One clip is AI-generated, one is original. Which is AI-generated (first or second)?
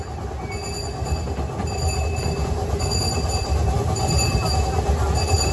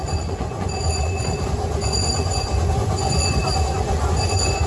second